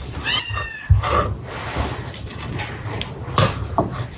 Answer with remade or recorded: recorded